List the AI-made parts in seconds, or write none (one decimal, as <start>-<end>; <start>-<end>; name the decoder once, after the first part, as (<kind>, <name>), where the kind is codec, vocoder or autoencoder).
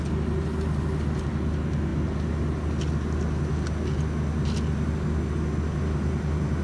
none